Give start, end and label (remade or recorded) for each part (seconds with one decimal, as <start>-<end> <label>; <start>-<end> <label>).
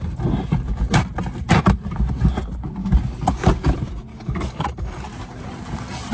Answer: 0.0-4.1 recorded; 4.1-5.0 remade; 5.0-6.1 recorded